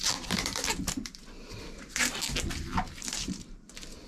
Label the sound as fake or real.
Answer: fake